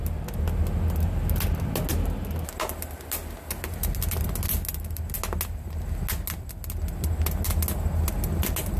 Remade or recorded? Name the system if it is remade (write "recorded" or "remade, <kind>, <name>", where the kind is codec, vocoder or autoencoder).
recorded